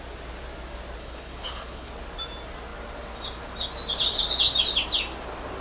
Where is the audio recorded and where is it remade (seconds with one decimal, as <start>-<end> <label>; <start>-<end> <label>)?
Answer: 0.0-1.0 recorded; 1.0-1.9 remade; 1.9-5.6 recorded